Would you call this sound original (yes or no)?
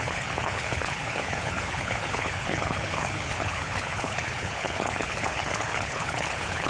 no